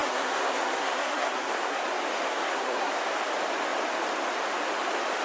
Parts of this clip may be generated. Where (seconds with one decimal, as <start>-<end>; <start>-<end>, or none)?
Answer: 0.0-1.8; 2.3-2.9